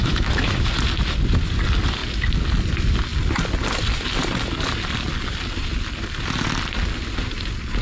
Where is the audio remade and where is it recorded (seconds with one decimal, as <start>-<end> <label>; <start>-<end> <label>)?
0.0-0.7 remade; 0.7-7.8 recorded